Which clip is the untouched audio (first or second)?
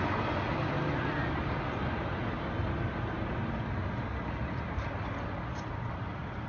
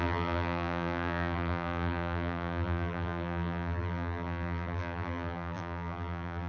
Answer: first